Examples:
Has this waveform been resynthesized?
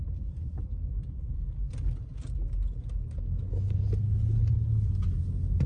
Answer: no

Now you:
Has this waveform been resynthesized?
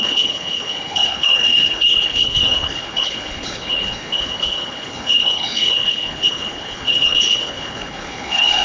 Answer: yes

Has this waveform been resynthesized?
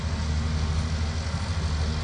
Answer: no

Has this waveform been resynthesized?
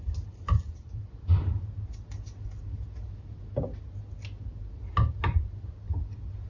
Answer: no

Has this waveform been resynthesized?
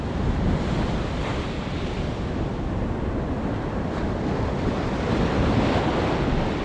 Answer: no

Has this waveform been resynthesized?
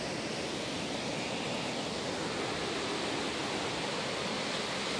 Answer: no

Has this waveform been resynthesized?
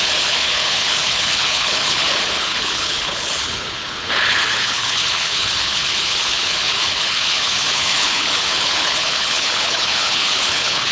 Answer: yes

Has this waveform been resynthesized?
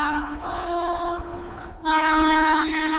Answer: yes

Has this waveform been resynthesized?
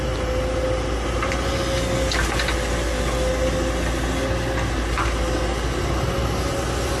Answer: no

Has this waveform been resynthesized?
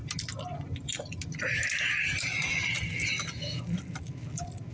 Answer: no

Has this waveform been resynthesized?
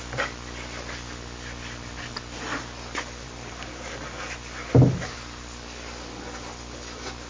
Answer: no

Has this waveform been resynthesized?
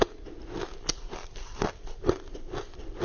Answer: no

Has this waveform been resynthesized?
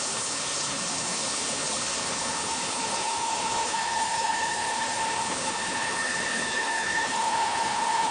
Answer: yes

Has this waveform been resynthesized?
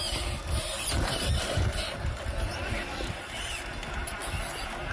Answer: no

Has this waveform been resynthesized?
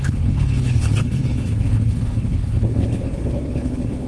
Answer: yes